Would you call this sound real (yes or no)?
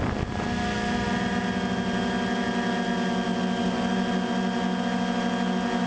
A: yes